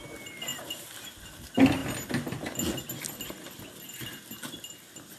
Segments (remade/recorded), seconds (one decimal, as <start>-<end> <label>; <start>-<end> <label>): 0.0-0.5 recorded; 0.5-1.2 remade; 1.2-5.2 recorded